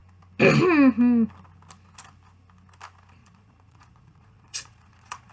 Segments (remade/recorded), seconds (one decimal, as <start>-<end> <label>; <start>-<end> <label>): 0.0-3.2 recorded; 3.2-5.3 remade